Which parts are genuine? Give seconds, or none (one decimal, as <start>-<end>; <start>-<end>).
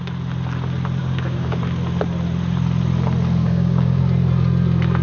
0.0-1.0; 1.6-3.4; 4.0-5.0